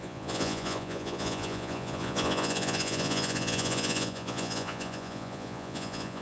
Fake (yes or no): yes